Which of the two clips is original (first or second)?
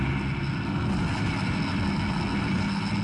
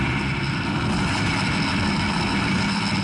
first